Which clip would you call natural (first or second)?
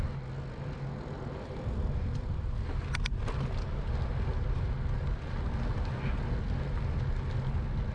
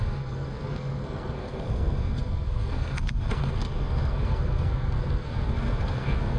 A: first